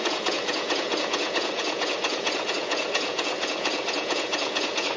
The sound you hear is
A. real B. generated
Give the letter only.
B